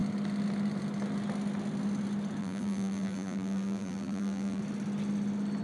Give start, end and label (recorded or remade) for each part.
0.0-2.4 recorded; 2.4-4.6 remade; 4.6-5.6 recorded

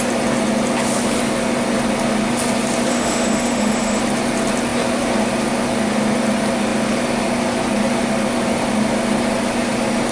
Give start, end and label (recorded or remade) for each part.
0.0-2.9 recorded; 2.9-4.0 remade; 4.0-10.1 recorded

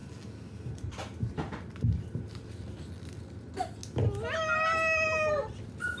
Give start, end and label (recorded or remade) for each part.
0.0-6.0 recorded

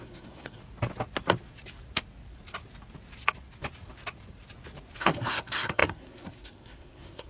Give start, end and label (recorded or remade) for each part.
0.0-0.6 remade; 0.6-5.0 recorded; 5.0-7.3 remade

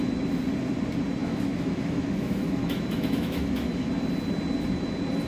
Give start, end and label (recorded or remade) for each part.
0.0-1.2 recorded; 1.2-3.9 remade; 3.9-5.3 recorded